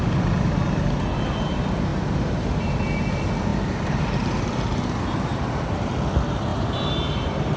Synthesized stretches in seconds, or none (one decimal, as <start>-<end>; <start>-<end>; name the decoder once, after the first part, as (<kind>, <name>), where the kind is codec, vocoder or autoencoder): 1.9-3.0 (vocoder, BigVGAN v2); 3.5-4.6; 5.3-5.9; 6.5-7.6